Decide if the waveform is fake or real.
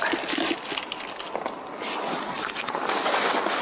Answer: real